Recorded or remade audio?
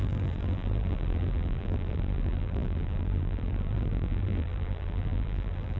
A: remade